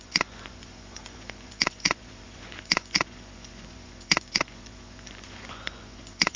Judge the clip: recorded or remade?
remade